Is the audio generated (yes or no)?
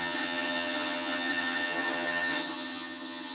yes